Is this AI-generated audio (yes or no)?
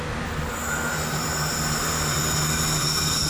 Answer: no